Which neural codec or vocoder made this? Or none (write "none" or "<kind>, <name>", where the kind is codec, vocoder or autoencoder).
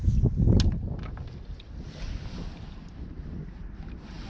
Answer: none